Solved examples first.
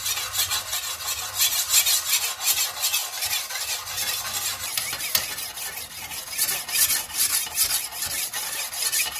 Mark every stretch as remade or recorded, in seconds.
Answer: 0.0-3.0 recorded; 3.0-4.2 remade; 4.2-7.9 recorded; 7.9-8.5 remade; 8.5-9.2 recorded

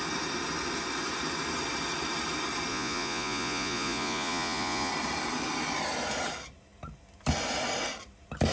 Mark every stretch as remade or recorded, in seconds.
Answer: 0.0-2.7 recorded; 2.7-4.9 remade; 4.9-8.5 recorded

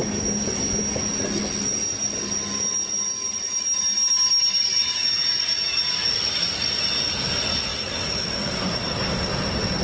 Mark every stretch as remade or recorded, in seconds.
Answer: 0.0-4.7 recorded; 4.7-5.4 remade; 5.4-9.8 recorded

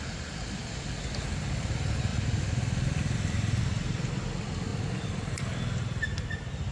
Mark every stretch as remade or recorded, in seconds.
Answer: 0.0-6.7 recorded

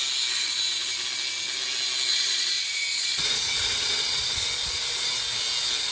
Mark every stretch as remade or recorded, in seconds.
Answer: 0.0-2.1 recorded; 2.1-5.1 remade; 5.1-5.9 recorded

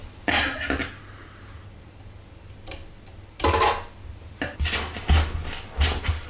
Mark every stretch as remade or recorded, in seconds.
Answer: 0.0-6.3 recorded

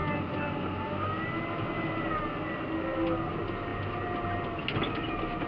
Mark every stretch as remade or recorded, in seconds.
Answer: 0.0-5.5 recorded